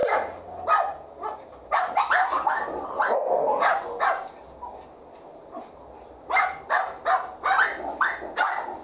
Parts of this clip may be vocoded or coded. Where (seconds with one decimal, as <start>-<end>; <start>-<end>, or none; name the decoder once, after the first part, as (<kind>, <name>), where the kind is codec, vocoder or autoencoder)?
none